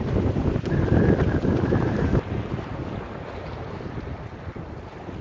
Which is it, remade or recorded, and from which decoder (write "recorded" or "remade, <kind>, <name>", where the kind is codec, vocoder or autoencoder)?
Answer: recorded